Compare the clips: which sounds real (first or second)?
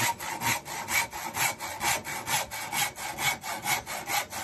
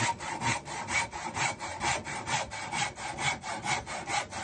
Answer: first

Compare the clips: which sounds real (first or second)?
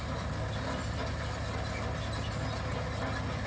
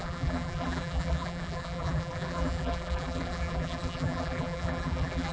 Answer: first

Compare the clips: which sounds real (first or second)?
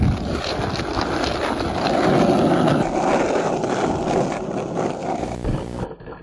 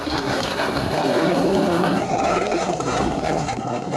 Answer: first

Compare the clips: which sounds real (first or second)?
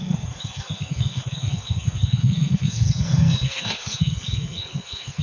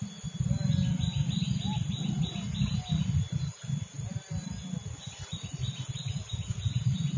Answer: second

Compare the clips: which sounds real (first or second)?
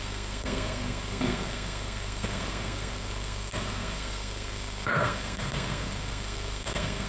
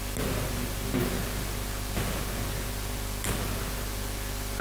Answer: second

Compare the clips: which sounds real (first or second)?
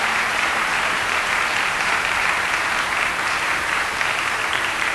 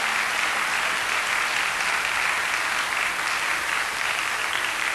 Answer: second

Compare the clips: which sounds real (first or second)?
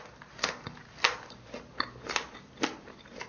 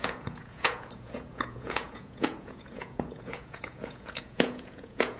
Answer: first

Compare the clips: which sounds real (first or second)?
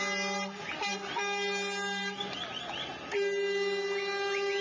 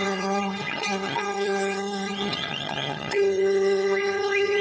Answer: first